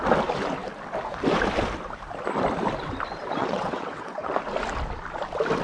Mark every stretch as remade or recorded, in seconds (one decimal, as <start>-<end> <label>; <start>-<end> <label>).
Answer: 0.0-3.4 recorded; 3.4-4.3 remade; 4.3-5.6 recorded

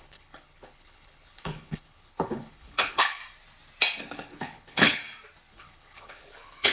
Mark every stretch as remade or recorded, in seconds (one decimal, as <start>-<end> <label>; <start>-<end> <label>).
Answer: 0.0-3.2 remade; 3.2-4.0 recorded; 4.0-5.0 remade; 5.0-5.5 recorded; 5.5-6.7 remade